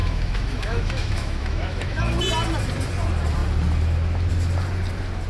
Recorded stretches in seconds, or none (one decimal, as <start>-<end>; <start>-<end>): 2.0-5.3